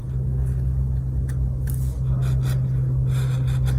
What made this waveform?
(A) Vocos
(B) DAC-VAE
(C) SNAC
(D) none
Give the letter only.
D